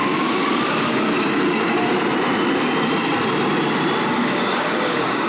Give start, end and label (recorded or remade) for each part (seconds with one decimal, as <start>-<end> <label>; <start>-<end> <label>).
0.0-0.9 remade; 0.9-4.1 recorded; 4.1-5.3 remade